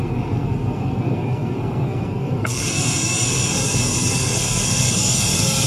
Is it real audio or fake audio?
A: fake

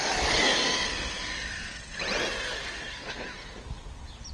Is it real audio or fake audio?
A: real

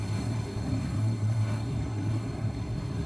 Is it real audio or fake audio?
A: fake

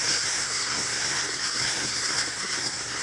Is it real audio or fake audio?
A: fake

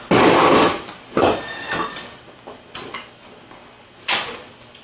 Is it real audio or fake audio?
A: real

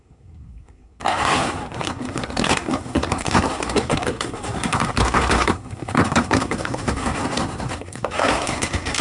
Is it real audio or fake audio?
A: fake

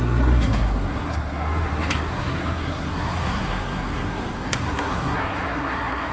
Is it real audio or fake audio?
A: fake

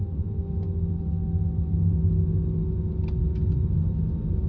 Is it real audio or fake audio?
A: real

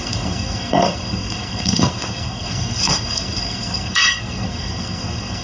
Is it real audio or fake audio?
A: fake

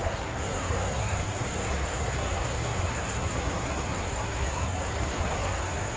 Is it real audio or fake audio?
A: fake